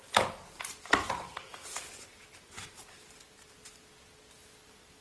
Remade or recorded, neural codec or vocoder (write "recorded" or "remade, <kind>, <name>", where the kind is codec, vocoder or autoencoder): recorded